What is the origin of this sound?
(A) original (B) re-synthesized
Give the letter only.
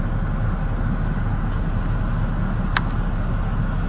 A